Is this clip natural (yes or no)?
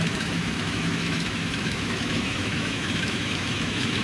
no